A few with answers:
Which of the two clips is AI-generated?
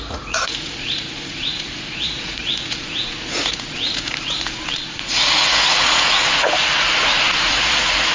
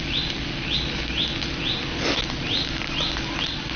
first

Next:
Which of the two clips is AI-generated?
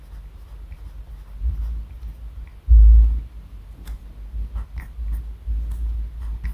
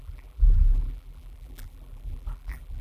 second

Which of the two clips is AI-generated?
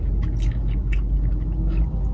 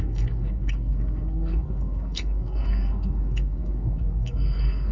second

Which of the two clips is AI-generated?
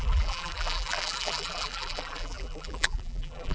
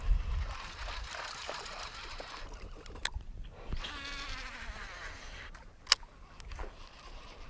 first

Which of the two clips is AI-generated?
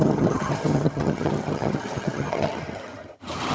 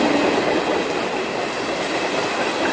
first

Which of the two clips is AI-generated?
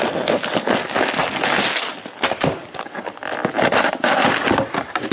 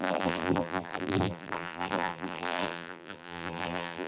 second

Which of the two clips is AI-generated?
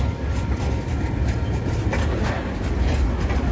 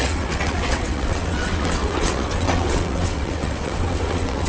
second